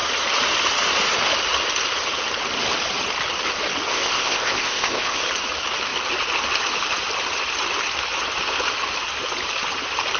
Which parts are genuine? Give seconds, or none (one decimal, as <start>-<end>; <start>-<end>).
0.0-3.9; 5.2-10.2